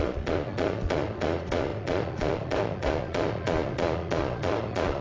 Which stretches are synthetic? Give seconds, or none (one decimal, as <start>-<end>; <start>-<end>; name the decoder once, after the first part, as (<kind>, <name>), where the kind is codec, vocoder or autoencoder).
0.0-5.0 (vocoder, Vocos)